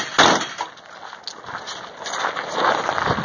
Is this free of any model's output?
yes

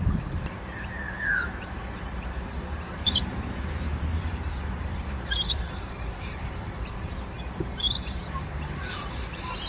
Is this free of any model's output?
no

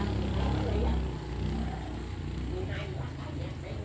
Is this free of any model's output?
yes